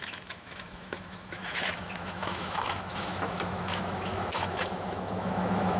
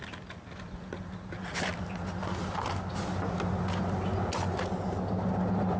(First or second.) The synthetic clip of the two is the first